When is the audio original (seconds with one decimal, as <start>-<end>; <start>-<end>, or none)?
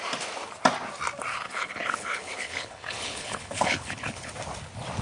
0.0-1.3; 4.3-5.0